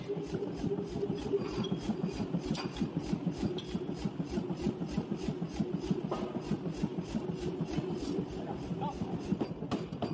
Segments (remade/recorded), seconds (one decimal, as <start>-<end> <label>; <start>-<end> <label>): 0.0-10.1 recorded